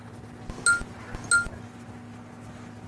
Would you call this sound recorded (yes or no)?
yes